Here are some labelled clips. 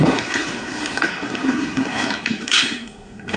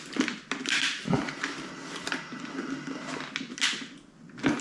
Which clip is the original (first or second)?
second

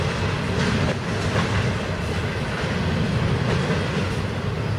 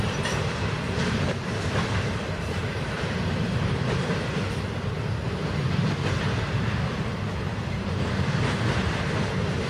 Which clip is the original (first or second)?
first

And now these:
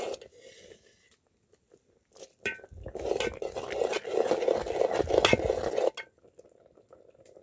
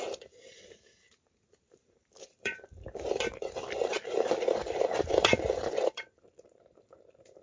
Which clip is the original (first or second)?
first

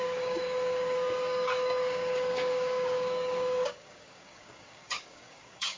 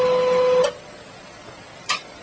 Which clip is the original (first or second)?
second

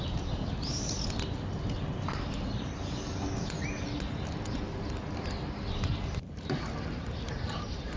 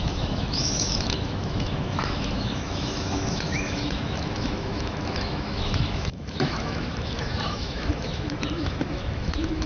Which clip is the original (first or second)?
first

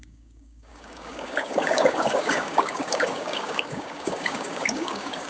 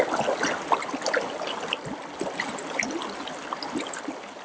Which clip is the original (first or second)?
second